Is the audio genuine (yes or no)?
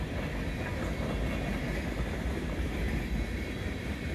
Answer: yes